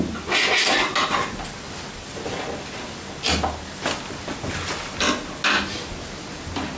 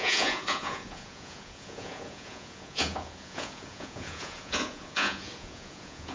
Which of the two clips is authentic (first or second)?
first